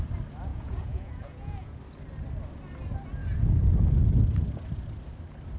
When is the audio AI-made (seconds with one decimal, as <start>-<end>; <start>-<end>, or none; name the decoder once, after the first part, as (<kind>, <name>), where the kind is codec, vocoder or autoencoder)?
0.5-1.8 (vocoder, Vocos); 3.2-4.1